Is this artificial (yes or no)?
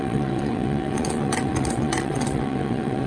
yes